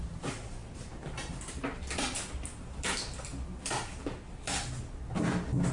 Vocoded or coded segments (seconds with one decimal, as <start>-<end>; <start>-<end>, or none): none

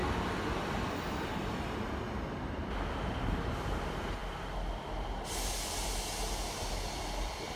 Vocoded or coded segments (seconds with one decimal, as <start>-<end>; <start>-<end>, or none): none